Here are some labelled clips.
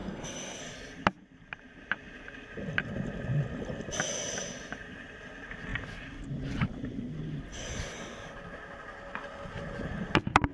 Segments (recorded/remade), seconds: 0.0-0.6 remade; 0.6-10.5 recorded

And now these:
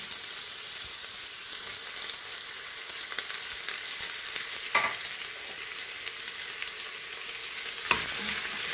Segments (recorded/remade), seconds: 0.0-8.7 recorded